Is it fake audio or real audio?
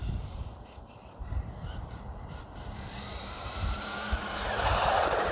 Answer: fake